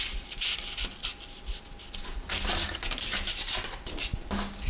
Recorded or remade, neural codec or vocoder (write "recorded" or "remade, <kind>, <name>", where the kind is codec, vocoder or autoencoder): recorded